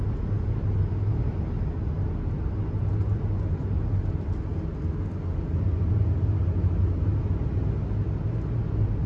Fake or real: real